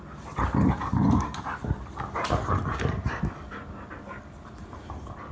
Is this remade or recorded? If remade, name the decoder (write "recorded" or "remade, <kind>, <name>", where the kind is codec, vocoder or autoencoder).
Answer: recorded